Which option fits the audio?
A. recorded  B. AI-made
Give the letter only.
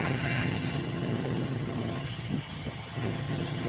B